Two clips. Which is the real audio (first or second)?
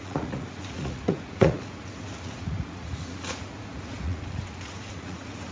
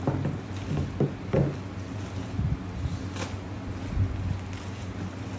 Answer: second